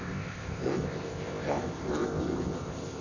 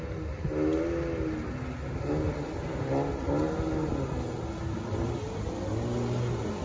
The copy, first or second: first